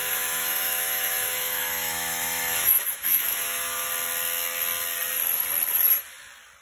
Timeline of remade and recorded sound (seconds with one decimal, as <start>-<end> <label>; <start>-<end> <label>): 0.0-3.9 remade; 3.9-6.6 recorded

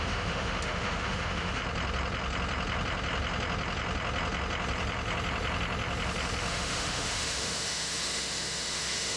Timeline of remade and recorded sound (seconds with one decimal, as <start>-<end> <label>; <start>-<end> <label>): 0.0-1.6 remade; 1.6-6.5 recorded; 6.5-9.2 remade

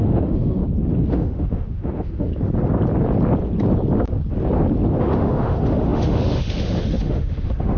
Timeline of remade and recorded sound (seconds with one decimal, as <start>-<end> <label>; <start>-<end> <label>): 0.0-0.6 remade; 0.6-1.1 recorded; 1.1-2.3 remade; 2.3-5.0 recorded; 5.0-7.8 remade

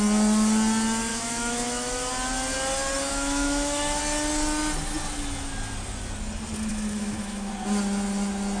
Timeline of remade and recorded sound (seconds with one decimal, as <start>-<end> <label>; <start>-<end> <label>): 0.0-1.1 recorded; 1.1-2.1 remade; 2.1-3.1 recorded; 3.1-4.0 remade; 4.0-6.7 recorded; 6.7-7.5 remade; 7.5-8.6 recorded

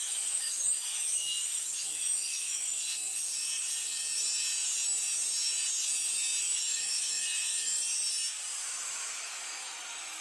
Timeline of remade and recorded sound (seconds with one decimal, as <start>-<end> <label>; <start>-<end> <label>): 0.0-2.8 remade; 2.8-6.4 recorded; 6.4-7.7 remade; 7.7-8.6 recorded; 8.6-10.2 remade

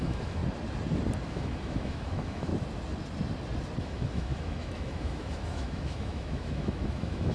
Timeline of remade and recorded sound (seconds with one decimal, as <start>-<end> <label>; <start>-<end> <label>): 0.0-0.4 remade; 0.4-1.3 recorded; 1.3-2.5 remade; 2.5-3.8 recorded; 3.8-7.3 remade